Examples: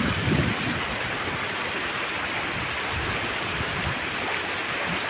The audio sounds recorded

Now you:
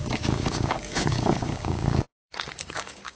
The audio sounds remade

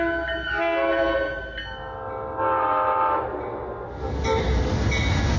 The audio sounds recorded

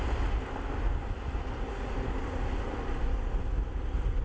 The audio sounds recorded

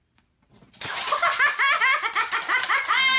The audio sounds recorded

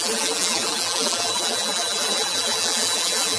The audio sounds remade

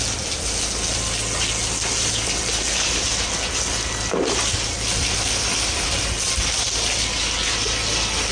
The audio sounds recorded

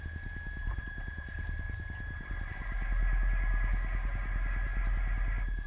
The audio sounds recorded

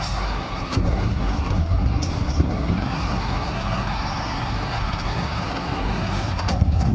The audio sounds remade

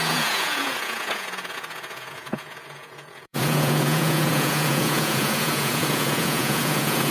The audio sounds remade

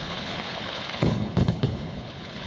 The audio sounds remade